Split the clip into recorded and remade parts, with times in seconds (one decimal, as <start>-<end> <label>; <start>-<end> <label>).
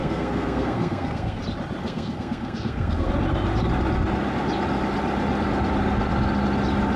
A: 0.0-1.4 remade; 1.4-1.8 recorded; 1.8-3.1 remade; 3.1-7.0 recorded